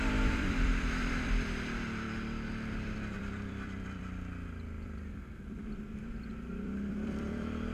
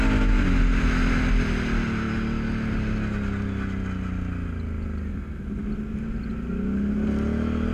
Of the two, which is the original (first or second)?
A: second